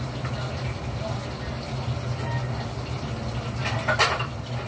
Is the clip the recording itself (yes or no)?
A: yes